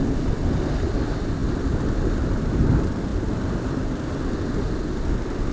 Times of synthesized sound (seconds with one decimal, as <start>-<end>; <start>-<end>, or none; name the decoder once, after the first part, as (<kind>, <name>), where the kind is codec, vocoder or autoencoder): none

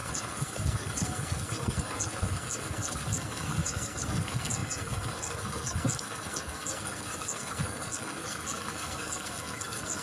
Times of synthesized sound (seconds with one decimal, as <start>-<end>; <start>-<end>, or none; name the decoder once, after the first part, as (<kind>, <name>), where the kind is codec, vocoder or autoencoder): 0.0-10.0 (codec, SNAC)

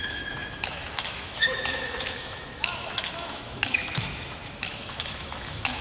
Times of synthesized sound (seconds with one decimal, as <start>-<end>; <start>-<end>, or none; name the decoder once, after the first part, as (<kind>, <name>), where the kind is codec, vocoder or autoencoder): 0.0-5.8 (autoencoder, DAC-VAE)

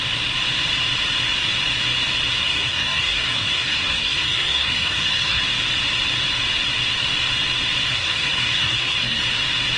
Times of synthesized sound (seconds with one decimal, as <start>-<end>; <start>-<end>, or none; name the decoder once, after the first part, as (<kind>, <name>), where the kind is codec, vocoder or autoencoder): 2.4-5.4 (codec, SNAC); 7.9-9.2

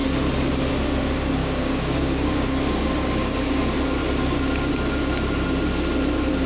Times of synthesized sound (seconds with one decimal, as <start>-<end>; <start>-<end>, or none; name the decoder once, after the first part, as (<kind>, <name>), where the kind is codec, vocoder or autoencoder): 1.4-3.6 (codec, DAC)

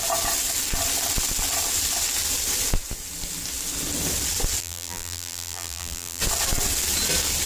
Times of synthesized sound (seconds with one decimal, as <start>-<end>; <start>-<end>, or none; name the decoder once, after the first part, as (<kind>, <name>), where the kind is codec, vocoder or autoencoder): 4.6-6.2 (vocoder, BigVGAN v2)

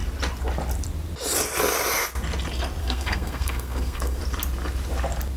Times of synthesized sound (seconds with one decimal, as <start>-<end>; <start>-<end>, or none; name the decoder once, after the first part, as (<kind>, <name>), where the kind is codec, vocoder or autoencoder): 2.8-4.2 (codec, SNAC)